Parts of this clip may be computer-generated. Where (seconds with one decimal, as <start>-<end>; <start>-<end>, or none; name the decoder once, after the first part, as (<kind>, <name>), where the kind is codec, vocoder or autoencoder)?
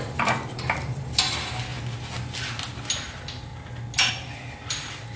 0.0-1.7 (vocoder, BigVGAN v2); 3.1-3.5; 4.1-5.2